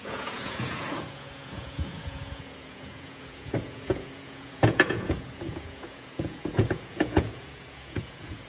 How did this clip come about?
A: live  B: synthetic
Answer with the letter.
B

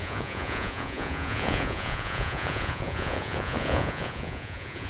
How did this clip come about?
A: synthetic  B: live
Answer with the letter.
A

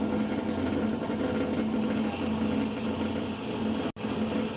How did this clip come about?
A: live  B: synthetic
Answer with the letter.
A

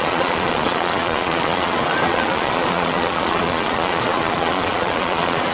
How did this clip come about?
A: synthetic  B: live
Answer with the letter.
A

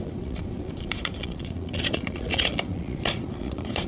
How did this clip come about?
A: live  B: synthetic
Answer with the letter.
B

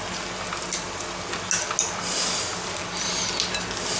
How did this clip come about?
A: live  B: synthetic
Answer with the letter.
A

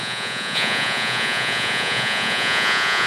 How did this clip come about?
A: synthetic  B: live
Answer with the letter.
A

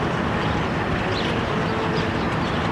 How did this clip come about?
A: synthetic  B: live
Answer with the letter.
B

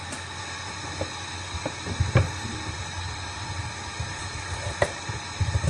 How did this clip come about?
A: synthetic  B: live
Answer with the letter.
B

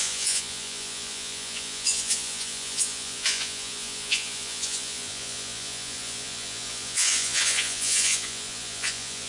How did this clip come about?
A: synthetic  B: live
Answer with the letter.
A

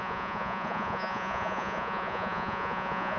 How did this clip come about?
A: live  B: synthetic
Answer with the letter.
B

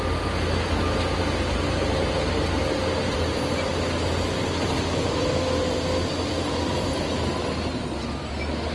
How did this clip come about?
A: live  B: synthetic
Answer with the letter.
A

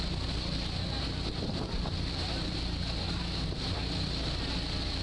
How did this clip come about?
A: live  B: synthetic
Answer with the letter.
A